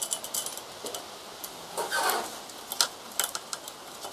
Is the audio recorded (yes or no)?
yes